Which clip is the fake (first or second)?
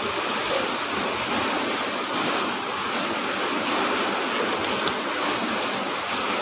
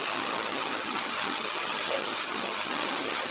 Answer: second